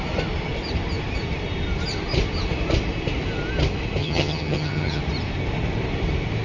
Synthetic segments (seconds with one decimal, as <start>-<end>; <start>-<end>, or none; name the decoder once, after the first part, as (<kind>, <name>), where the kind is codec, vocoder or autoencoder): 4.0-5.0 (vocoder, HiFi-GAN)